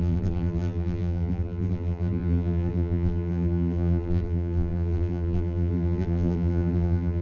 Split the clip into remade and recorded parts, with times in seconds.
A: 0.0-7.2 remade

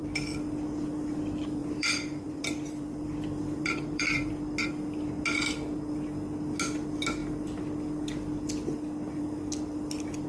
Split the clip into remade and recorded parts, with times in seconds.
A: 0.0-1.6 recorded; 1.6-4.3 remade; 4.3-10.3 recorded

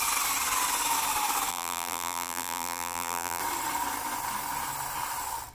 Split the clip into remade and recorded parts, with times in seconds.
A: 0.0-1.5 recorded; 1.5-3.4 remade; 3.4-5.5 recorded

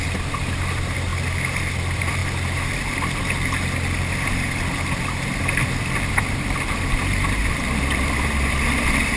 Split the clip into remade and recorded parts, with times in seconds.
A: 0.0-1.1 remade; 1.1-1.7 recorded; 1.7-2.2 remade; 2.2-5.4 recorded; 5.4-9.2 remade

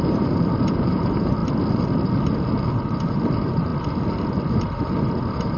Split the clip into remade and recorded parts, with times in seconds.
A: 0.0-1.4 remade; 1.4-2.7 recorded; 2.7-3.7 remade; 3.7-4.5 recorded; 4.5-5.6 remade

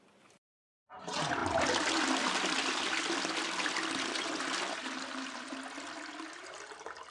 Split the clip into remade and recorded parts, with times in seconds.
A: 0.0-1.4 recorded; 1.4-3.7 remade; 3.7-7.1 recorded